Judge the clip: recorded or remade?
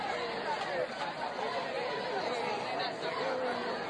recorded